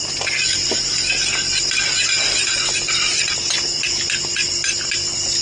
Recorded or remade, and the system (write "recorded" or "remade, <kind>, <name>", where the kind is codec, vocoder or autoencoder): recorded